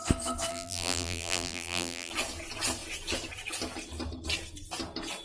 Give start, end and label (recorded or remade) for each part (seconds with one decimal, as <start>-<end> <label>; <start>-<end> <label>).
0.0-0.5 recorded; 0.5-2.1 remade; 2.1-5.2 recorded